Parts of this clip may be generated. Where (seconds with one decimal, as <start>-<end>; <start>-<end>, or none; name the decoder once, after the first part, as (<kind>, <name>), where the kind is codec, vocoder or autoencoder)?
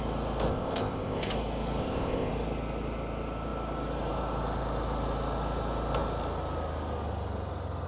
0.5-1.3 (codec, ZipCodec); 1.8-2.3